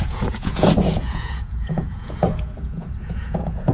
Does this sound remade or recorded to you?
remade